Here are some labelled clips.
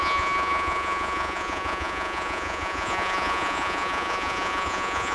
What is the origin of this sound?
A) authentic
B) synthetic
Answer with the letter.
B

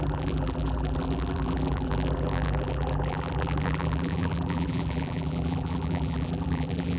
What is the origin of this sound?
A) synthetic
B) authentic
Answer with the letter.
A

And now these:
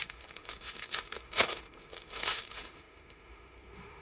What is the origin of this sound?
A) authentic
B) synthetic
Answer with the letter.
B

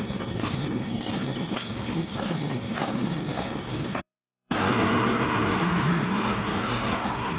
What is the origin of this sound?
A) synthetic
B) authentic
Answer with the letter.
A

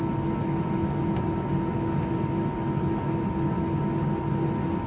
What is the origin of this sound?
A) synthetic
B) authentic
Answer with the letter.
B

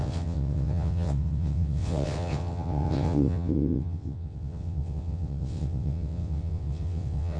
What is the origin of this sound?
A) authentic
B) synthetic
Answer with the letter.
B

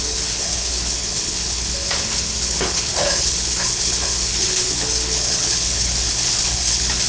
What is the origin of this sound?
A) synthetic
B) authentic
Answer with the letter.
A